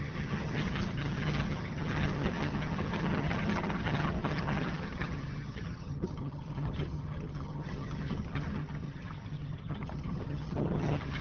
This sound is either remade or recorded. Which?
remade